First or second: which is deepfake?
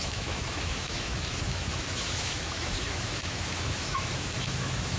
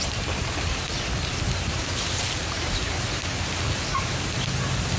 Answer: first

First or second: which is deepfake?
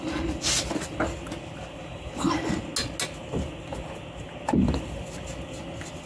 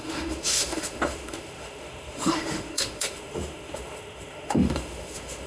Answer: second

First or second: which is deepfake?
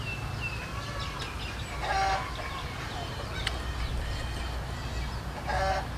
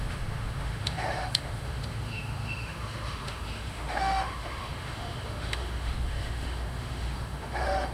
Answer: second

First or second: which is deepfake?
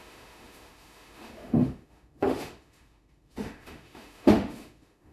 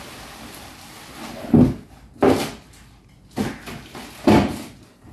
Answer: first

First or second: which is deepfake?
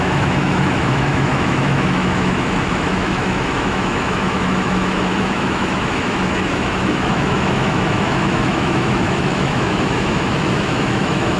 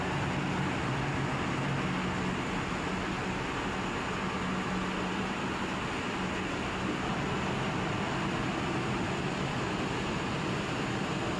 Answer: first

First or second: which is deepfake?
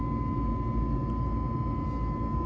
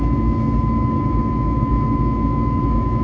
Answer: second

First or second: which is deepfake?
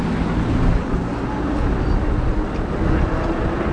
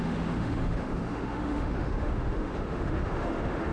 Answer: second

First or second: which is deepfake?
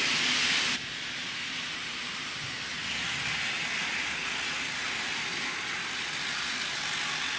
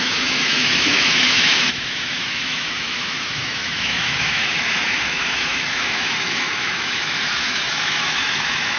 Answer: second